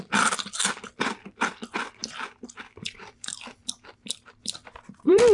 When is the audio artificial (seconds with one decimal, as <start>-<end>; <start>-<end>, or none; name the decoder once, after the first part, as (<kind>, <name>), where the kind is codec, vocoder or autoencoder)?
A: 0.0-5.3 (vocoder, BigVGAN v2)